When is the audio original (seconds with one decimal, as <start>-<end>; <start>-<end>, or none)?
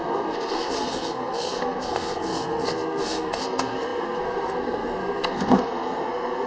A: none